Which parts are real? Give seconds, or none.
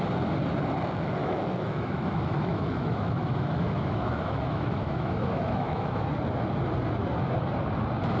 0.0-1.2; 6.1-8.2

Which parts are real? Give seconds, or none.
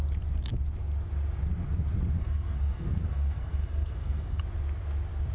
0.0-2.2; 4.4-5.3